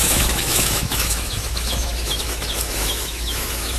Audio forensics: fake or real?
fake